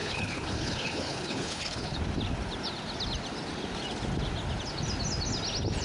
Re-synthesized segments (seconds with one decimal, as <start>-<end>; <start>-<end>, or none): 0.0-2.0